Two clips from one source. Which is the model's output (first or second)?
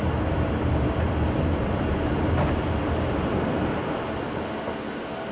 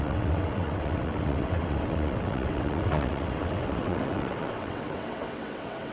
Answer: second